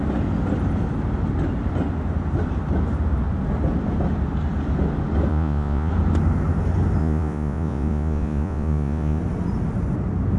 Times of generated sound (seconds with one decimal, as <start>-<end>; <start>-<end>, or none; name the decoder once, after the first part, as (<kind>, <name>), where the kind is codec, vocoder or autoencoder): 5.3-5.9 (vocoder, Vocos); 7.0-9.2